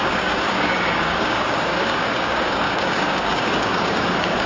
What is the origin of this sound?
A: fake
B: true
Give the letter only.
A